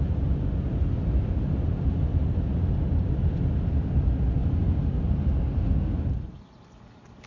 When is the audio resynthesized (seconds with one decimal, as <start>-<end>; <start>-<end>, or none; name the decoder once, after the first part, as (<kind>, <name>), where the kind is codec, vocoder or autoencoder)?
none